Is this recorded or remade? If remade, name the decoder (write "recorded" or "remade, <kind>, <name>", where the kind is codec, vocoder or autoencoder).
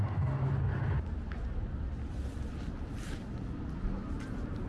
recorded